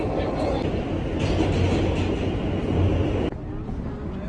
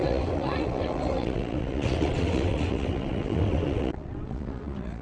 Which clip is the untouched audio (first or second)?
first